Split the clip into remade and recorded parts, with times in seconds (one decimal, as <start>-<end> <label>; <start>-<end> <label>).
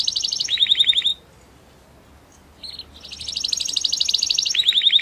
0.0-5.0 recorded